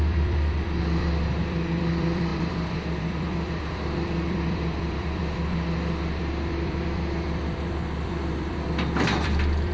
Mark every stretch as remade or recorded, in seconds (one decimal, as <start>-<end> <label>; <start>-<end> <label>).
0.0-9.7 remade